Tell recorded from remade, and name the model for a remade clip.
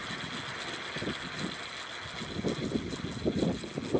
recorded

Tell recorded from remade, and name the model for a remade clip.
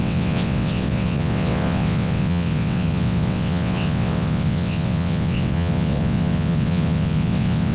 remade, vocoder, WaveNeXt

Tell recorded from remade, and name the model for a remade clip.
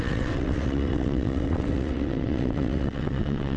remade, vocoder, WaveNeXt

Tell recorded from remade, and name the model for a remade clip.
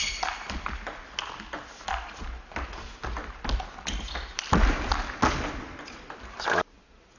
recorded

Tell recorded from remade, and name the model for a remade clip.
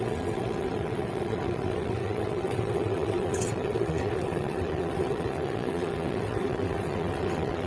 remade, vocoder, WaveNeXt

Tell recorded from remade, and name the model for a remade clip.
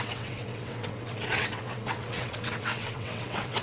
remade, vocoder, WaveNeXt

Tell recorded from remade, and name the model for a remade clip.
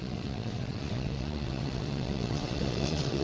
remade, vocoder, WaveNeXt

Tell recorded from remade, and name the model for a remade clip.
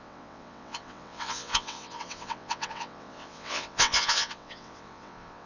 remade, vocoder, WaveNeXt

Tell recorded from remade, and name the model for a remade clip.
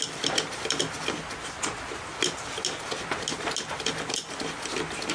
recorded